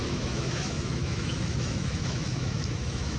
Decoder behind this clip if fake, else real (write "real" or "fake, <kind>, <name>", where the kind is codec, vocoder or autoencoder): fake, autoencoder, DAC-VAE